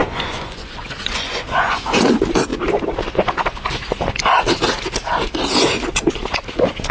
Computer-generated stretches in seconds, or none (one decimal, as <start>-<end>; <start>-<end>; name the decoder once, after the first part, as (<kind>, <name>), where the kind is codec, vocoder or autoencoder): 0.0-2.0 (vocoder, Vocos)